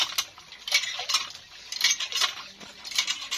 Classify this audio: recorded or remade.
recorded